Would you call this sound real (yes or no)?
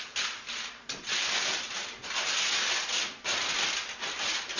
yes